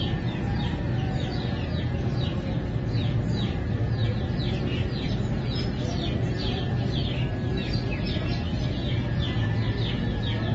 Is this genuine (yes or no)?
yes